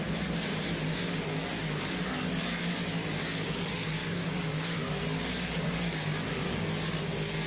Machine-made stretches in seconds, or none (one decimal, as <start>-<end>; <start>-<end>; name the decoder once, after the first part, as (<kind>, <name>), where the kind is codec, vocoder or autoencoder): 4.0-4.8 (codec, DAC)

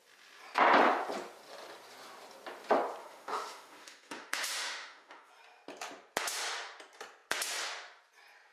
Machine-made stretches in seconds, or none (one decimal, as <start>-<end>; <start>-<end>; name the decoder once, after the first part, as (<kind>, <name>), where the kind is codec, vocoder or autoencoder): 3.0-5.3 (autoencoder, DAC-VAE)

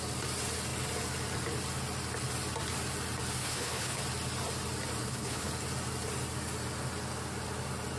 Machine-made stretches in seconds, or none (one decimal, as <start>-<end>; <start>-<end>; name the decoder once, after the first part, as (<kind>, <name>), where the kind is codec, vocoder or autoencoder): 3.4-4.0 (codec, HILCodec); 5.0-5.5